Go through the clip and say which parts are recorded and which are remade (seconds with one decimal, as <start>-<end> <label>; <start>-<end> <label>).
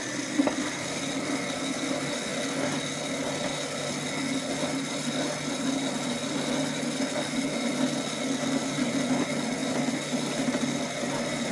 0.0-11.5 recorded